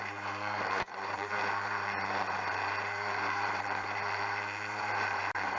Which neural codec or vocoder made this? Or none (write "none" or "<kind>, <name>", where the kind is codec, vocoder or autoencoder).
vocoder, BigVGAN v2